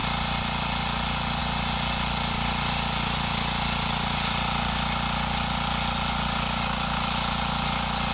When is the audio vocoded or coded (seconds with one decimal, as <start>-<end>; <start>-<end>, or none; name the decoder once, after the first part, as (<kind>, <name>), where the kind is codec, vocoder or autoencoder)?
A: none

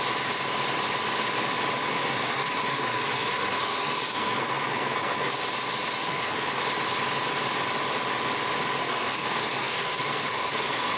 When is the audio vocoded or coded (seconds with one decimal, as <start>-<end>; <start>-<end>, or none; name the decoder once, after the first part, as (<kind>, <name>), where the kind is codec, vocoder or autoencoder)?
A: 1.9-5.3 (codec, SNAC); 6.1-6.6; 8.8-11.0